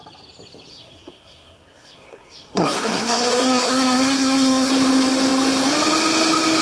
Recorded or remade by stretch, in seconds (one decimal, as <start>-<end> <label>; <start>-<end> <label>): 0.0-0.7 recorded; 0.7-4.7 remade; 4.7-6.6 recorded